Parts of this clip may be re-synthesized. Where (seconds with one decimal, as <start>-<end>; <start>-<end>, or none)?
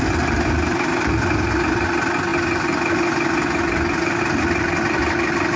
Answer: none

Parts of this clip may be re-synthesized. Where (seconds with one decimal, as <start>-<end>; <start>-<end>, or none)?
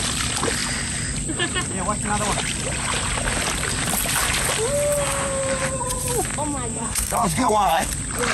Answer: 6.7-7.9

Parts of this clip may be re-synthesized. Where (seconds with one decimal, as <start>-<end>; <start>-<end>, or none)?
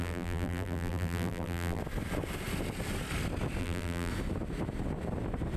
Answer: 0.0-1.8; 3.6-4.1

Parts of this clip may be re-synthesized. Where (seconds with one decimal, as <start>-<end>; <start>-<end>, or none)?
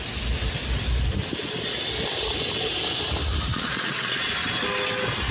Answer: 3.5-4.3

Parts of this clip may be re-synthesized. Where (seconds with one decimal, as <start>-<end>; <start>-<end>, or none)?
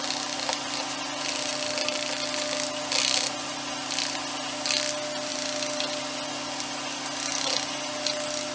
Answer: none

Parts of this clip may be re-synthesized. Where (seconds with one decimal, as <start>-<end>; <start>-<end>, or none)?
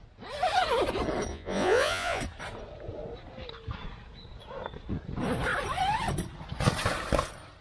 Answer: 1.3-2.2